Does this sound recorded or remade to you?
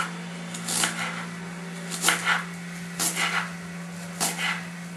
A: recorded